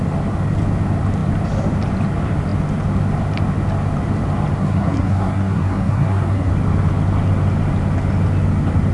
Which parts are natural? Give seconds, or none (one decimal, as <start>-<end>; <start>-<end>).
0.0-4.6; 6.5-8.9